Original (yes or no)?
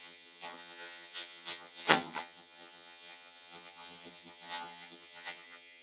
no